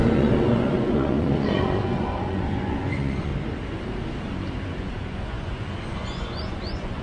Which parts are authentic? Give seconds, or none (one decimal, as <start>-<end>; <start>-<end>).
3.3-4.8